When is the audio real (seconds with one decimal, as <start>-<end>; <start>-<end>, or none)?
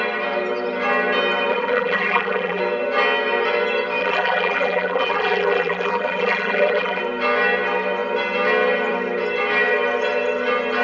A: 0.0-1.5; 2.6-4.0; 7.0-10.8